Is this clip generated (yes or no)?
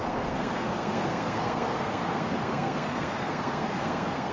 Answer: yes